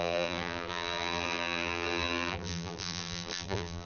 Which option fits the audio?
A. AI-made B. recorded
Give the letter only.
A